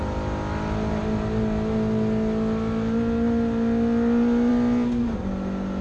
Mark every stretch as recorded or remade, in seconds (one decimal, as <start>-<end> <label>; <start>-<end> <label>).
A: 0.0-5.8 recorded